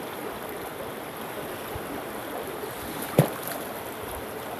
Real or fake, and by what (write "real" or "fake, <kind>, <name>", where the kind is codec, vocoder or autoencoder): real